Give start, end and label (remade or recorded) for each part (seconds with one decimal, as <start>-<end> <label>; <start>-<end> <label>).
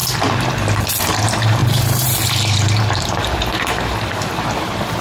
0.0-1.0 recorded; 1.0-5.0 remade